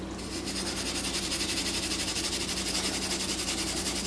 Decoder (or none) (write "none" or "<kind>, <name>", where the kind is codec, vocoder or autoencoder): none